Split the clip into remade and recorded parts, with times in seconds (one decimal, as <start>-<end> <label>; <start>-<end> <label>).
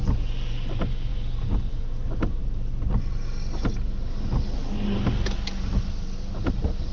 0.0-6.9 recorded